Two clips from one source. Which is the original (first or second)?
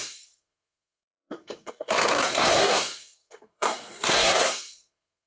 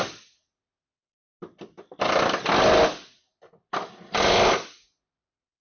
second